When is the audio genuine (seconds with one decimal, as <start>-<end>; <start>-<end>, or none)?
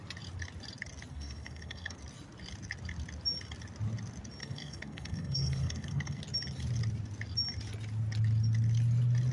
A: 0.0-1.1; 2.0-4.4; 6.2-9.3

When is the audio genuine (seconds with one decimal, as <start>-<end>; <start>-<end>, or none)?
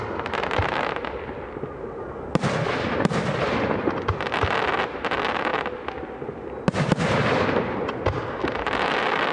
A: 0.0-9.3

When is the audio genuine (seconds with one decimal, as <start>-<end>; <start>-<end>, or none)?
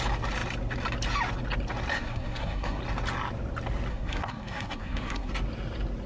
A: 0.0-1.9; 2.8-3.9; 5.3-6.1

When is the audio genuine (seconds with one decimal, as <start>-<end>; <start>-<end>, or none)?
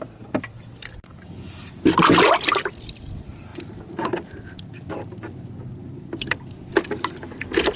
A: 0.0-7.8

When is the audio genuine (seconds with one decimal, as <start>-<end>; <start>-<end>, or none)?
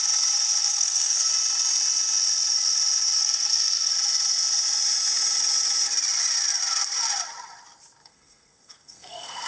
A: 0.0-0.6; 1.3-3.2; 3.9-8.0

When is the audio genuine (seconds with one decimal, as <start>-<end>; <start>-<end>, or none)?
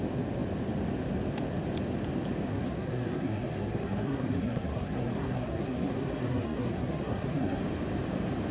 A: 0.0-2.5; 7.6-8.5